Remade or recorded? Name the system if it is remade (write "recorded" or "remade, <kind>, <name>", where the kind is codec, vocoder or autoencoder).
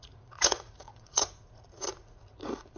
remade, vocoder, Vocos